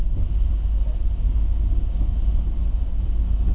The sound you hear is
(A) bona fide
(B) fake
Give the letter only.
A